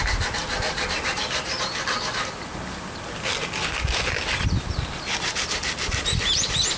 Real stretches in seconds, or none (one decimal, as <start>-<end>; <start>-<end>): 0.0-6.8